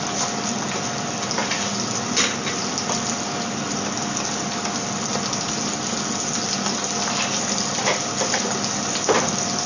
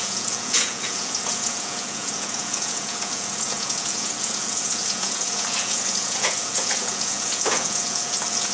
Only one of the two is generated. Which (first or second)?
second